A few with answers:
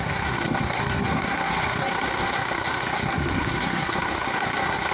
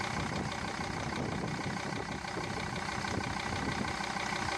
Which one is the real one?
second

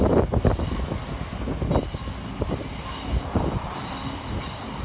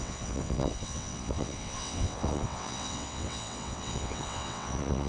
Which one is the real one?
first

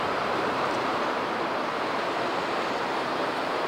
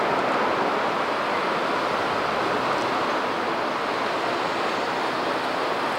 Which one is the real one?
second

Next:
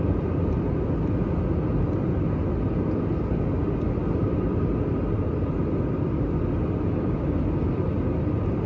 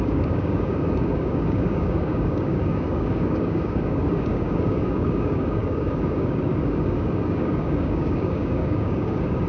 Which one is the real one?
first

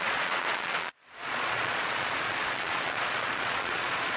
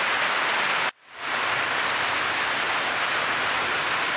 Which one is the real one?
second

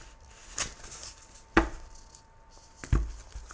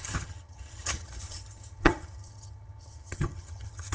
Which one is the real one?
first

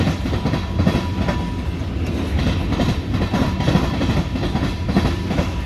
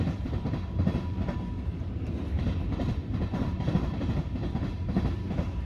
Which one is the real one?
first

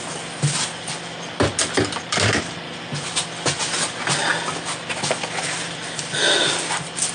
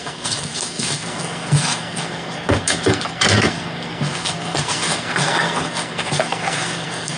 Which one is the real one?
first